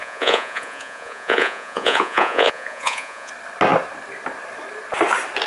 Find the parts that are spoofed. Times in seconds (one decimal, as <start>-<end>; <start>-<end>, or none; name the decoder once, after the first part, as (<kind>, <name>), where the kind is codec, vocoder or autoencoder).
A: 0.0-3.3 (vocoder, Vocos)